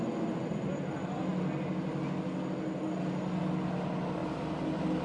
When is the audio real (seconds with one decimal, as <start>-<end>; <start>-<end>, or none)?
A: 0.0-5.0

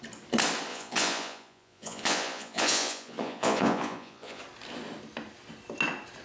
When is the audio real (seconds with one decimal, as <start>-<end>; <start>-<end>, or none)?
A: 0.0-0.7; 4.4-6.2

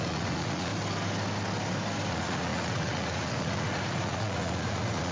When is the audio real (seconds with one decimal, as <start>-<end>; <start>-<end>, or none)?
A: 0.7-2.1

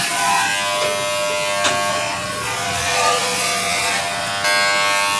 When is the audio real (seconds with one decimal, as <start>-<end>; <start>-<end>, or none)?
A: 0.5-1.9; 4.3-5.2

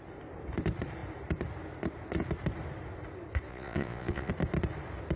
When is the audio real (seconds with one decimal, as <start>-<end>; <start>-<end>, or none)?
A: 0.0-3.5; 4.3-5.2

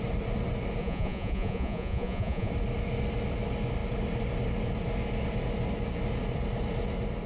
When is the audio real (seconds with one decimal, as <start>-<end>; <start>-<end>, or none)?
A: 0.0-0.8; 2.5-7.3